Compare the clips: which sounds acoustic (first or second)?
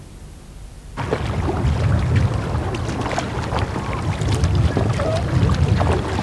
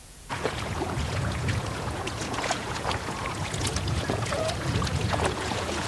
first